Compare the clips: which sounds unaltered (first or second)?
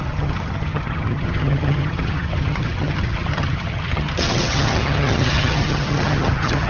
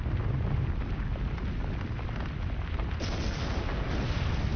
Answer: second